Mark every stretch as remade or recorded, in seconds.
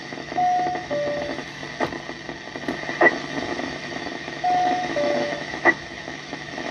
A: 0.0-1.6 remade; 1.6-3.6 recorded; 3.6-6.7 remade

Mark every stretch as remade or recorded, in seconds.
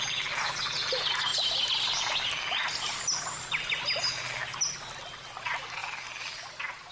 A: 0.0-5.8 recorded; 5.8-6.5 remade; 6.5-6.9 recorded